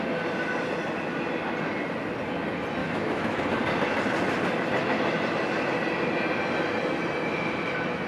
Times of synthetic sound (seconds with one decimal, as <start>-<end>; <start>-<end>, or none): 2.8-3.4